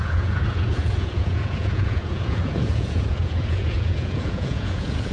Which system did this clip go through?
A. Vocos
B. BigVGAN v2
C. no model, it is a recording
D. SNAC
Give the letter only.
A